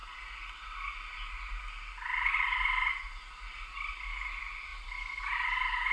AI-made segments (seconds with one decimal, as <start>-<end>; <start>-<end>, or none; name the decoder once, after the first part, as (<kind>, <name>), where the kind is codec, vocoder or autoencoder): none